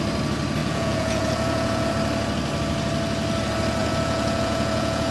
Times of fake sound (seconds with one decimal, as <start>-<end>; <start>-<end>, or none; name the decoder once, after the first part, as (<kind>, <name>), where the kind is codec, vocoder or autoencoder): 0.6-1.9 (vocoder, Vocos); 3.8-5.1